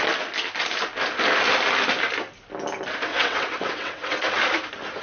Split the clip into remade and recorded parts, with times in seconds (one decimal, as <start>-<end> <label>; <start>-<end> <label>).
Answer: 0.0-3.1 recorded; 3.1-4.4 remade; 4.4-5.0 recorded